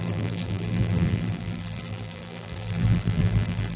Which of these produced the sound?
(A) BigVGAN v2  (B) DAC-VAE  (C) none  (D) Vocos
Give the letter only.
A